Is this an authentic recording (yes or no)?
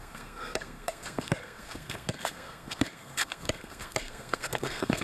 no